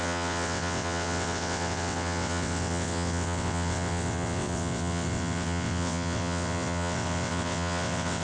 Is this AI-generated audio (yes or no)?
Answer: yes